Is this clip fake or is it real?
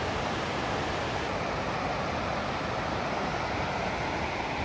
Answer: real